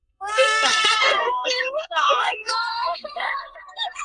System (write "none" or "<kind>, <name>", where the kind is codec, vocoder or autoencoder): codec, SNAC